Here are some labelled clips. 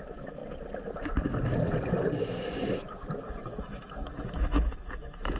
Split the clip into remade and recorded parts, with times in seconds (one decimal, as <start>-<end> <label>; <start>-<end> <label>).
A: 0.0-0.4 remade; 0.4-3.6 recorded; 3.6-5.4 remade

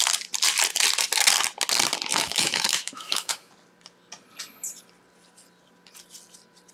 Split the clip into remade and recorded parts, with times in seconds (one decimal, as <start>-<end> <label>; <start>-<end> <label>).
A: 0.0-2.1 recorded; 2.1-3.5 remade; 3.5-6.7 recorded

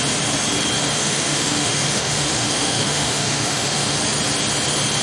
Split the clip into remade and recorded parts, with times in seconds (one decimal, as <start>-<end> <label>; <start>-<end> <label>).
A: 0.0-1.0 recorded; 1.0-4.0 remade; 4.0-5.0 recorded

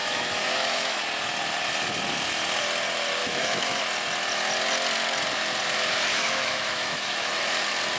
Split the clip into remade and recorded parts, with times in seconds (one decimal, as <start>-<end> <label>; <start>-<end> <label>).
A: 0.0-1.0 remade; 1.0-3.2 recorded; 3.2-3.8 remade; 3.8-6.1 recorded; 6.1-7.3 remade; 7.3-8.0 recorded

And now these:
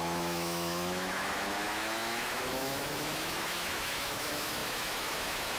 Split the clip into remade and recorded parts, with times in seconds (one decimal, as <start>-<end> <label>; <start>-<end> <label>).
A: 0.0-5.6 remade

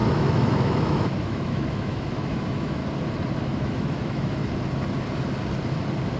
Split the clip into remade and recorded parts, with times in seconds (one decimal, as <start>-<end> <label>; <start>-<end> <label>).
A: 0.0-2.8 remade; 2.8-3.4 recorded; 3.4-4.4 remade; 4.4-6.2 recorded

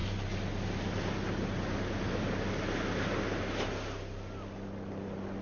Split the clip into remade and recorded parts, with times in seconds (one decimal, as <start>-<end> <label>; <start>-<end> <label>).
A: 0.0-5.4 recorded

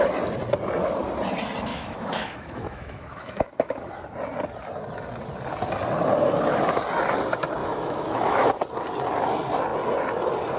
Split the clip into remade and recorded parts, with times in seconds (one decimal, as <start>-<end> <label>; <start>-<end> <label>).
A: 0.0-1.7 recorded; 1.7-3.9 remade; 3.9-7.6 recorded; 7.6-8.5 remade; 8.5-10.6 recorded